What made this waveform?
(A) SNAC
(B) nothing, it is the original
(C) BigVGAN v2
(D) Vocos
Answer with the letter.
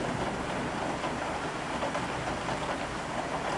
B